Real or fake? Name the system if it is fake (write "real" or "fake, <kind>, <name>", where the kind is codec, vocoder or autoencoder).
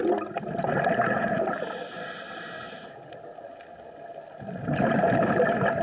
real